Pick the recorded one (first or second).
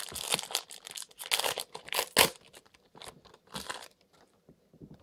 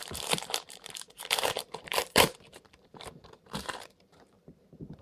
first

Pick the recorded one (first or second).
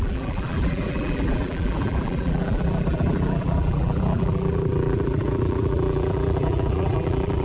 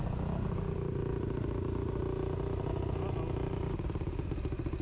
second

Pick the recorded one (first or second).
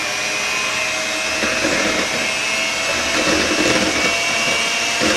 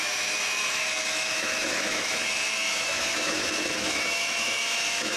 first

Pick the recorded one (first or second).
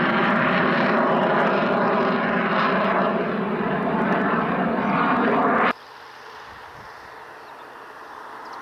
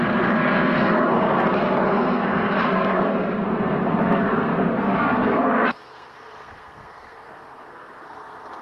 first